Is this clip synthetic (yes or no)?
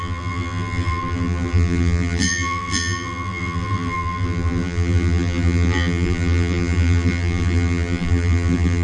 yes